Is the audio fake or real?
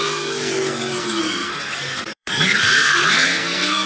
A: fake